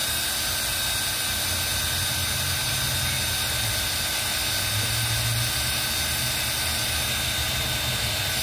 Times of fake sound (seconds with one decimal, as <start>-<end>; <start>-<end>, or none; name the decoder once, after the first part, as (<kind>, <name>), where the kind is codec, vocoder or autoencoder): none